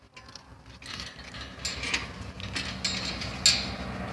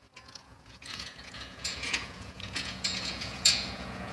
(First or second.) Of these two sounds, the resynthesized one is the second